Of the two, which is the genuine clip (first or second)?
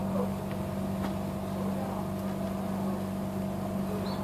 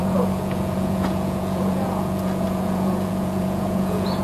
first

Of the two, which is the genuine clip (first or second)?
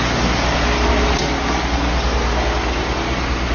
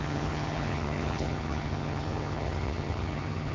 first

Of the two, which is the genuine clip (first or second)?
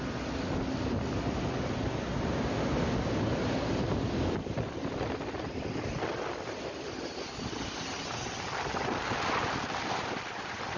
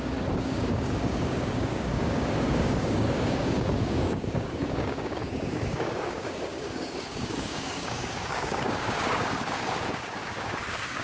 first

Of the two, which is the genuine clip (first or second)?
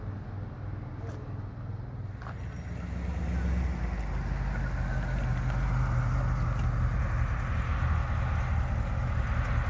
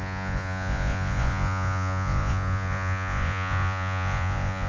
first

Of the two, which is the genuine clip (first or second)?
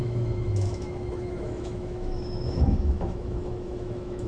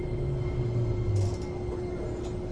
second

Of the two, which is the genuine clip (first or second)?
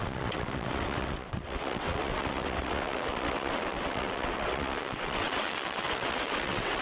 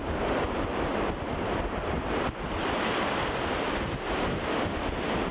second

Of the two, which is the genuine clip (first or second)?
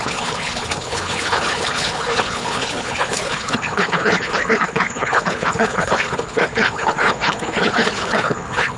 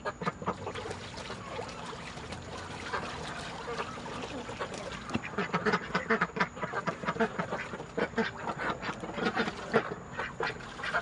second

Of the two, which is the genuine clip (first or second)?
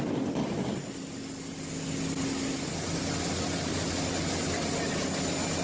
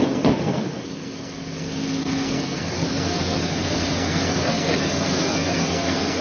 first